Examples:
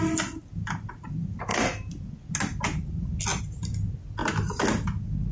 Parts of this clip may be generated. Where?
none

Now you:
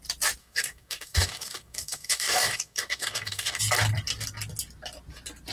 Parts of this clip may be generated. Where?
0.4-3.6